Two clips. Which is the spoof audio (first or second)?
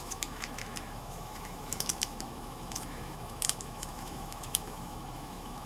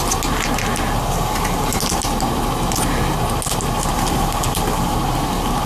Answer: first